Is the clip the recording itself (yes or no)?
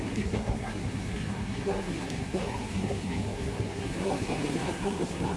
no